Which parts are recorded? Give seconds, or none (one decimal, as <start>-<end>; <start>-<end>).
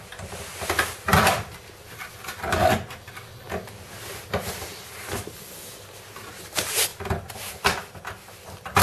0.0-8.8